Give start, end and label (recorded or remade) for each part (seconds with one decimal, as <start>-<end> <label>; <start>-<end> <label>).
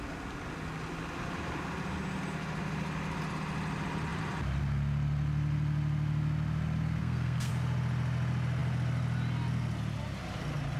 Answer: 0.0-7.0 recorded; 7.0-7.5 remade; 7.5-10.8 recorded